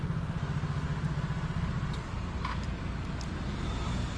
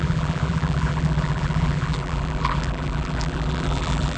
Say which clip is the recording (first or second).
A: first